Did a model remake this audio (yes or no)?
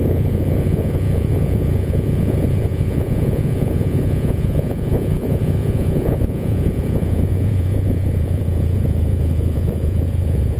yes